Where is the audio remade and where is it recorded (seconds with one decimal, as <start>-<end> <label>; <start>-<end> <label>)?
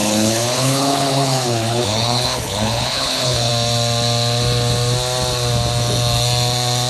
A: 0.0-3.5 remade; 3.5-6.9 recorded